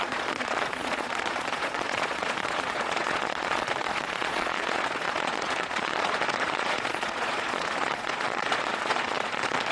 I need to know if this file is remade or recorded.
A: remade